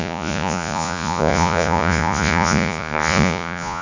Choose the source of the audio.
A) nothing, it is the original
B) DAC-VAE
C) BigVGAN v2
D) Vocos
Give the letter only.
D